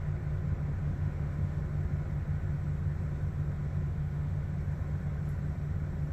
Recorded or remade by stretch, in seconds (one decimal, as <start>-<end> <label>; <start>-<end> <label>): 0.0-0.8 recorded; 0.8-1.6 remade; 1.6-3.9 recorded; 3.9-4.5 remade; 4.5-6.1 recorded